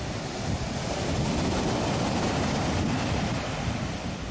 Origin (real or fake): real